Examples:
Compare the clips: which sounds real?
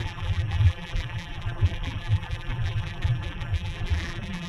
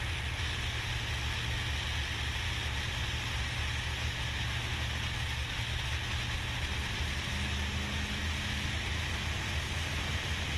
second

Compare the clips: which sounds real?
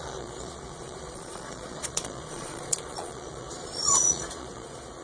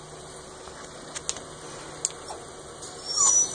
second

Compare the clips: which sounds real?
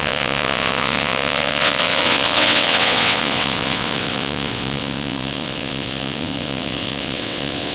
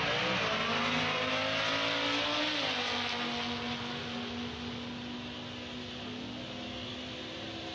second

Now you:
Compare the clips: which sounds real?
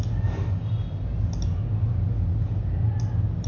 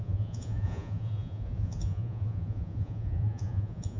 first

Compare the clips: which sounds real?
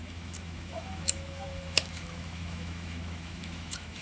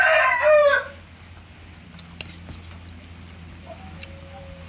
second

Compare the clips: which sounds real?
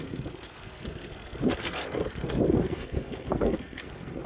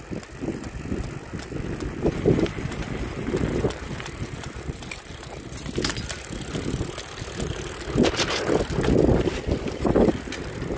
second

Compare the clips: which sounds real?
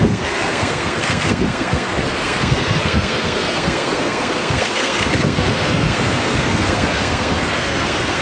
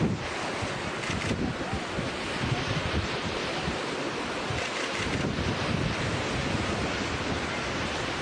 second